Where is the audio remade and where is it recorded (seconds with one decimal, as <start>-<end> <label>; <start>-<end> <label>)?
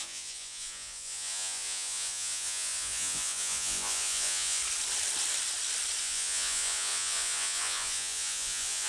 0.0-4.6 remade; 4.6-6.0 recorded; 6.0-8.9 remade